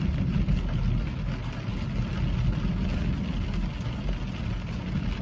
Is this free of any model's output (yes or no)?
yes